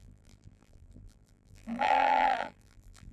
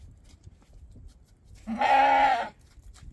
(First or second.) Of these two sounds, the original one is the second